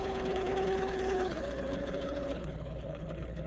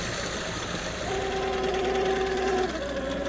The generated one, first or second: first